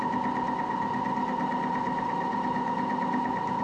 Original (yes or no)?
yes